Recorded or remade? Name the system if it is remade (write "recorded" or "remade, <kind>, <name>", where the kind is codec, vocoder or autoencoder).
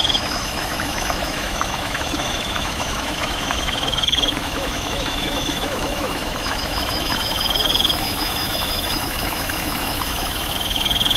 remade, autoencoder, DAC-VAE